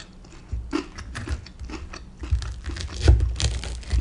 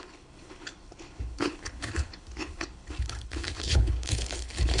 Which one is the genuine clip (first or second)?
first